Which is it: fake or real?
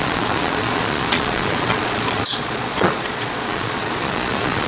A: fake